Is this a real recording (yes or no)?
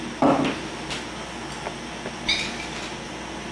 yes